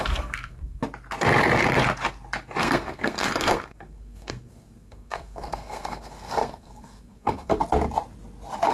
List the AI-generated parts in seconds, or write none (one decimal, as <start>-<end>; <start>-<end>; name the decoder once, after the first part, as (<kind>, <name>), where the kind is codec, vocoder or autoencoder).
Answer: 0.0-0.8 (codec, SNAC); 2.6-7.6